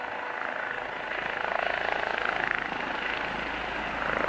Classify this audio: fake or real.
real